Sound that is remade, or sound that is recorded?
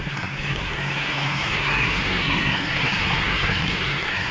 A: remade